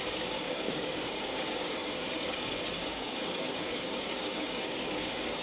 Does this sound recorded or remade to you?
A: remade